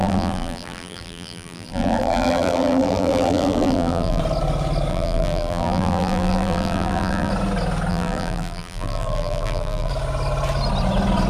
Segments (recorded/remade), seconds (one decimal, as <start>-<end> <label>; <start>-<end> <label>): 0.0-4.2 remade; 4.2-4.9 recorded; 4.9-7.3 remade; 7.3-7.9 recorded; 7.9-9.9 remade; 9.9-11.3 recorded